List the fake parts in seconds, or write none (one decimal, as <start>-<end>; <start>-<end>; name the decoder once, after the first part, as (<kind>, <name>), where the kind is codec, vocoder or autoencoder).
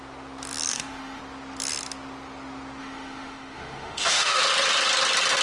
0.7-1.2 (autoencoder, DAC-VAE); 2.8-4.4